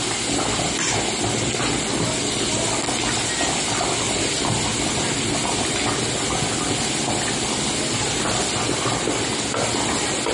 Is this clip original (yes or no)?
yes